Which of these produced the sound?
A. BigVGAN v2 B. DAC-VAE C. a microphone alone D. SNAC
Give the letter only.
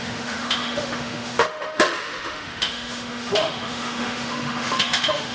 B